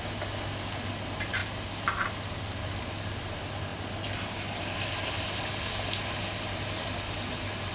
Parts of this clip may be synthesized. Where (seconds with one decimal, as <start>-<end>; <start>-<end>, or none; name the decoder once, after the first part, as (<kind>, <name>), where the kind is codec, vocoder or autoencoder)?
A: none